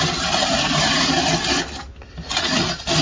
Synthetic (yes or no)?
no